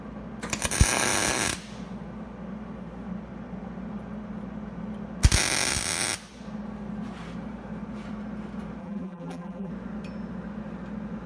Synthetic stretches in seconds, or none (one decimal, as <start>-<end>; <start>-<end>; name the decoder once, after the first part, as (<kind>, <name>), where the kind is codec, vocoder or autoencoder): 8.8-9.7 (vocoder, BigVGAN v2)